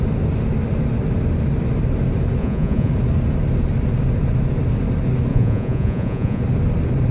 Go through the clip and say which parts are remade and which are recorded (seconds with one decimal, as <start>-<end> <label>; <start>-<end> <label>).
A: 0.0-2.4 recorded; 2.4-2.9 remade; 2.9-5.3 recorded; 5.3-6.4 remade; 6.4-7.1 recorded